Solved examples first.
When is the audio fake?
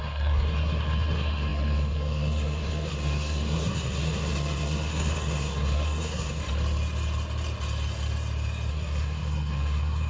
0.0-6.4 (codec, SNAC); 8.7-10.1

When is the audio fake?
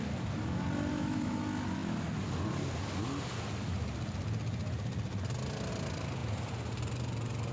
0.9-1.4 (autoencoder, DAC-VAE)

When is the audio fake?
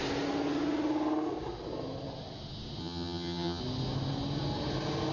2.8-3.6 (vocoder, HiFi-GAN)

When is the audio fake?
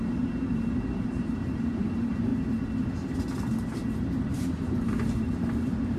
0.0-2.3 (vocoder, BigVGAN v2); 3.6-6.0